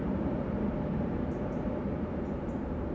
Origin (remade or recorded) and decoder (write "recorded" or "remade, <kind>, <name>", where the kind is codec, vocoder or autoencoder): remade, vocoder, BigVGAN v2